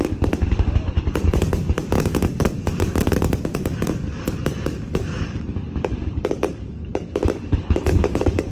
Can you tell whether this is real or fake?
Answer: fake